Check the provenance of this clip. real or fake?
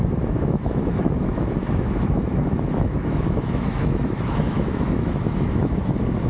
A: fake